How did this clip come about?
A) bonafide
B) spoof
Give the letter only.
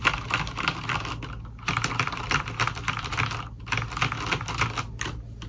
A